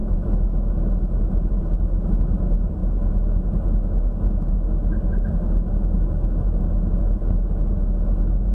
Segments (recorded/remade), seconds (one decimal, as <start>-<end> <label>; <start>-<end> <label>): 0.0-8.5 recorded